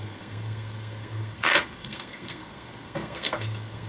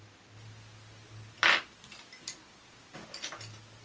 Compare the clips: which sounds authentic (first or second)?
second